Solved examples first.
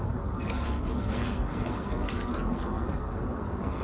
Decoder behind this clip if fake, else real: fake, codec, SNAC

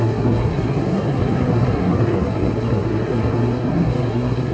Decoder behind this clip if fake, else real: fake, codec, SNAC